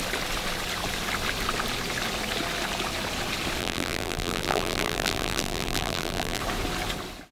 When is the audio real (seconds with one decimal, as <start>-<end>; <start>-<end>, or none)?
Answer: 0.0-3.6; 6.4-7.3